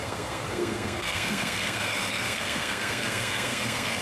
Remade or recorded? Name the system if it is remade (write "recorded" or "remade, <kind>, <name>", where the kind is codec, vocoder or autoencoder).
remade, codec, SNAC